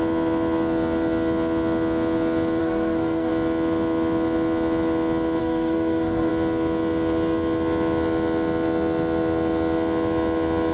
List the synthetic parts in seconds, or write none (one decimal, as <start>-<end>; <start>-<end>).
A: 2.6-3.3; 5.4-6.3